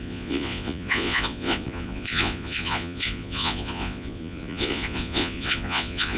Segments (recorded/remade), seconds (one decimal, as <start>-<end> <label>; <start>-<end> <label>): 0.0-6.2 remade